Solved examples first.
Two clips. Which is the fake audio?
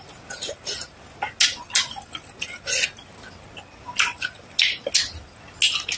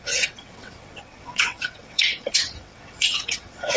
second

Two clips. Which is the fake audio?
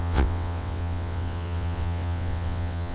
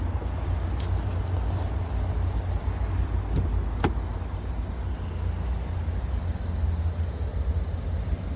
first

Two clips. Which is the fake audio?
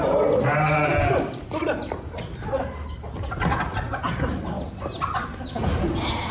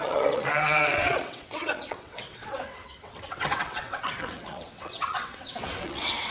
second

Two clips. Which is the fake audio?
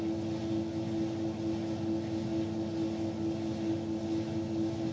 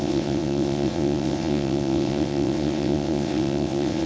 second